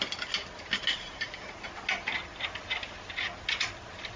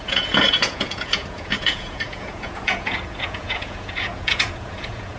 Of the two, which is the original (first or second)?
first